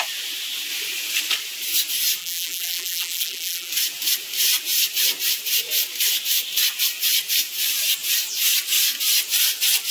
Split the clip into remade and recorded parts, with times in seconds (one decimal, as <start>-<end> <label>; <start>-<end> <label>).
0.0-2.2 recorded; 2.2-3.7 remade; 3.7-9.9 recorded